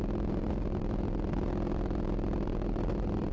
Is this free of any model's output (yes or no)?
yes